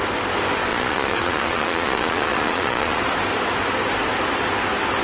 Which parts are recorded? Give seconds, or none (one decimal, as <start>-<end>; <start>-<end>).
0.0-0.7; 3.0-5.0